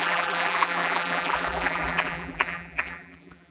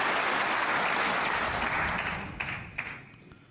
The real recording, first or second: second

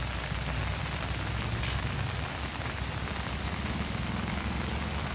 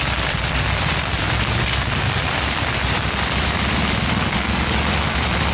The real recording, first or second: first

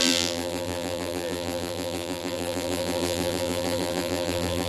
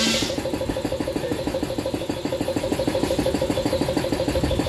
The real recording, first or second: second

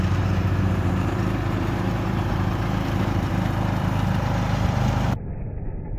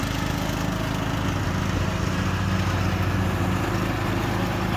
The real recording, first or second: second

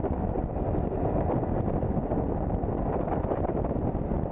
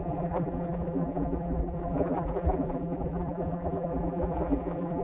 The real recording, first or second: first